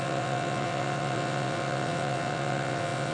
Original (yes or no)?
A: no